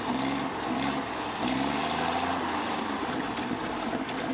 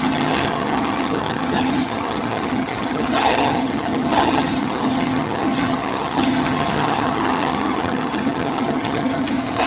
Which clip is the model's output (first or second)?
second